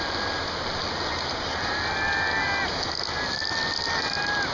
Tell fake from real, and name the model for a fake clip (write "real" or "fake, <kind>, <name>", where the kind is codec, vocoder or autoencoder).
real